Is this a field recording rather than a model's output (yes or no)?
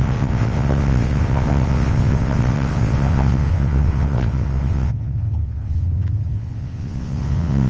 no